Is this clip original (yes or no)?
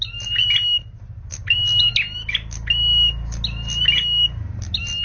yes